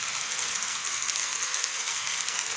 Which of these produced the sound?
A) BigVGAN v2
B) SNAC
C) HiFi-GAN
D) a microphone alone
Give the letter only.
B